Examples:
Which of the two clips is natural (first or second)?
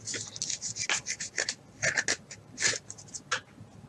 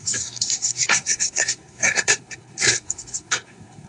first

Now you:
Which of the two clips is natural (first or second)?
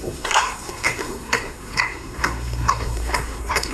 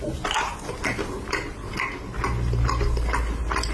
second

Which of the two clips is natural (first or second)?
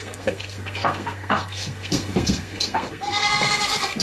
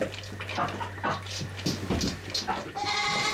second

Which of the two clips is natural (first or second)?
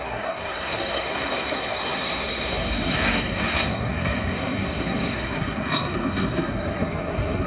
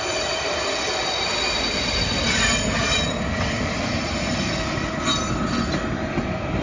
second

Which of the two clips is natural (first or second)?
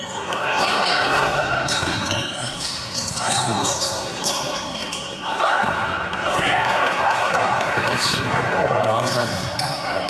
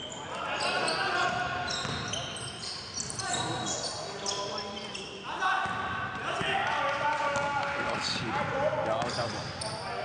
second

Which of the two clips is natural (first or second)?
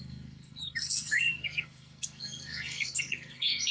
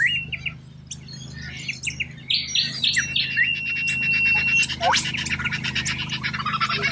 second